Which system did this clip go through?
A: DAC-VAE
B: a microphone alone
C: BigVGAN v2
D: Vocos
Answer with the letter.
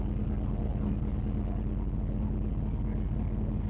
B